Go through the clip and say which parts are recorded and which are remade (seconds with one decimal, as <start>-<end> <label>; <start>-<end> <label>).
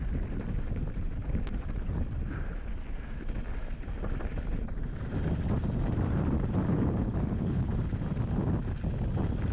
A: 0.0-6.7 recorded; 6.7-7.7 remade; 7.7-9.5 recorded